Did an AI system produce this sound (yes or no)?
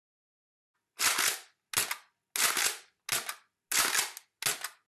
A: no